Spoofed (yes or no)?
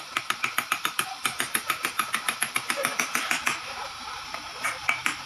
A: yes